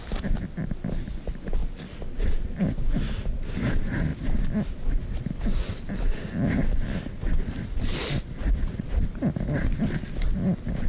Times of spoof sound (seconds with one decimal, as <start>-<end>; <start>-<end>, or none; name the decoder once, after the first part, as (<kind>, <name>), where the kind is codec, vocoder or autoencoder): 8.4-9.0 (vocoder, Vocos)